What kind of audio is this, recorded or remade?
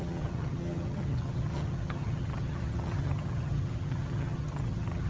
remade